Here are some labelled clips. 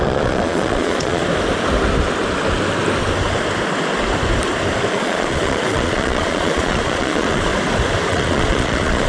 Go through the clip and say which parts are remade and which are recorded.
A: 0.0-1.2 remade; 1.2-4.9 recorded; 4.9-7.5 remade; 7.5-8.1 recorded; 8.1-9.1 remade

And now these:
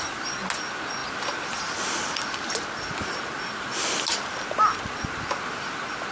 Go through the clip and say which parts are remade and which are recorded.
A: 0.0-6.1 recorded

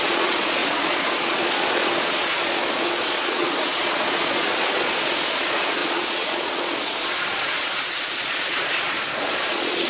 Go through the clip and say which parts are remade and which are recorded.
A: 0.0-9.9 remade

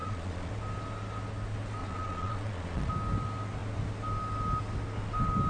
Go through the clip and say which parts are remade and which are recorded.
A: 0.0-0.5 remade; 0.5-1.8 recorded; 1.8-2.9 remade; 2.9-5.5 recorded

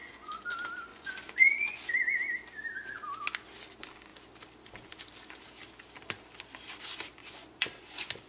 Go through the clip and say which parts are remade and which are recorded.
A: 0.0-0.5 remade; 0.5-0.9 recorded; 0.9-1.9 remade; 1.9-7.2 recorded; 7.2-8.3 remade

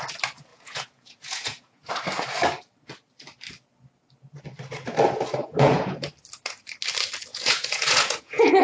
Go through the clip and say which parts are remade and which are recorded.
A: 0.0-0.5 recorded; 0.5-1.9 remade; 1.9-5.4 recorded; 5.4-6.1 remade; 6.1-7.3 recorded; 7.3-8.6 remade

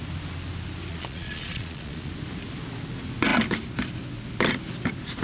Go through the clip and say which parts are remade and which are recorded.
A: 0.0-0.9 recorded; 0.9-2.1 remade; 2.1-5.2 recorded

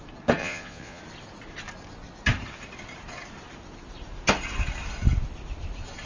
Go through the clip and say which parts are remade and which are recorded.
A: 0.0-0.4 recorded; 0.4-1.0 remade; 1.0-6.1 recorded